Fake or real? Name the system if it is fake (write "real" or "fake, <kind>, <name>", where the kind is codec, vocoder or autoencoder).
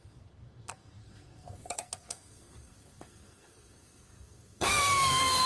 fake, codec, SNAC